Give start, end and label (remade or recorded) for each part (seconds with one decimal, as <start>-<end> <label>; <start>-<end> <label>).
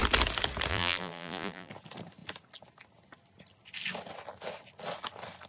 0.0-0.7 recorded; 0.7-1.7 remade; 1.7-5.5 recorded